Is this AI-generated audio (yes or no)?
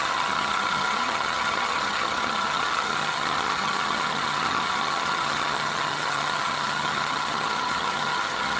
yes